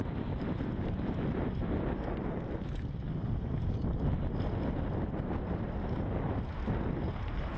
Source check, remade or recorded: recorded